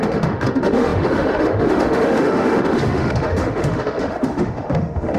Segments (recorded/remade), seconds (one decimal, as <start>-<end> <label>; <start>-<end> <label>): 0.0-5.2 remade